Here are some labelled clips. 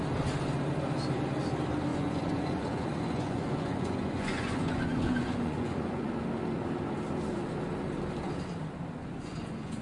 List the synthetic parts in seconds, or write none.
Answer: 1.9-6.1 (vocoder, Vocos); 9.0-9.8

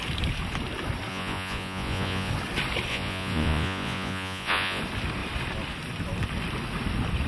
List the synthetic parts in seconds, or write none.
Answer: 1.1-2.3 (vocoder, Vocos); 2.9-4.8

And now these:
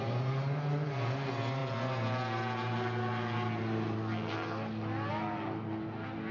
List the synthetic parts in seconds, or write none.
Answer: none

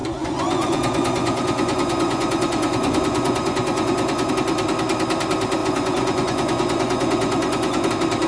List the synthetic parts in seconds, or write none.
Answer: 0.0-4.3 (vocoder, Vocos); 5.6-7.9